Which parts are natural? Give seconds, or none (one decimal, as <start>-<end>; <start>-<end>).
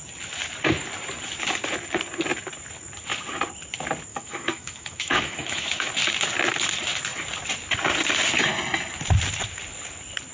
0.0-4.1; 5.9-10.3